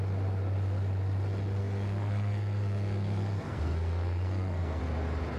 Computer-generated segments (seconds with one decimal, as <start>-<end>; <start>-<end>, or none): 1.6-4.8